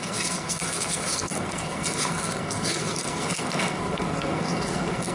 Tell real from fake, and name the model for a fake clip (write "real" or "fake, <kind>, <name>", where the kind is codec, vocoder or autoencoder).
fake, codec, SNAC